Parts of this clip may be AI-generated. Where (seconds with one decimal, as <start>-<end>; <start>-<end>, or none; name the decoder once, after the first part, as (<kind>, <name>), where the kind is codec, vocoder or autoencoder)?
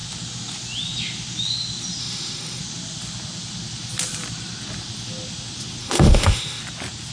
2.0-2.6 (autoencoder, DAC-VAE); 5.8-6.6